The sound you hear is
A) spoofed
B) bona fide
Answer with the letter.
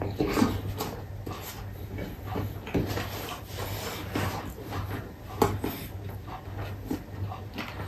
B